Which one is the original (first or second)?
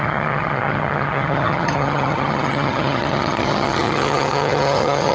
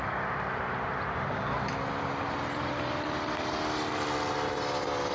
second